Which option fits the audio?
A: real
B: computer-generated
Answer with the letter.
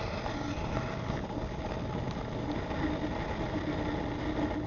A